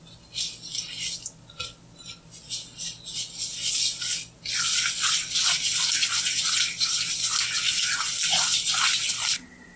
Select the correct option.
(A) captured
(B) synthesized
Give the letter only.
A